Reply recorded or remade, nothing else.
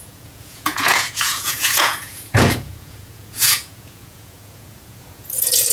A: remade